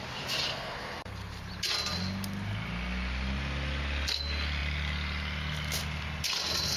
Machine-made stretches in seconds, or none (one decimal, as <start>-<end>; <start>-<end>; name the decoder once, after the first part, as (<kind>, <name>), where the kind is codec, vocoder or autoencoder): 0.5-1.3 (codec, SNAC)